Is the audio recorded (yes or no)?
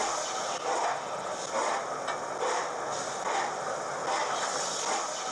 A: yes